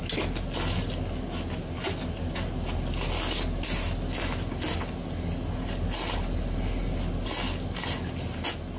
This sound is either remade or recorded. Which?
recorded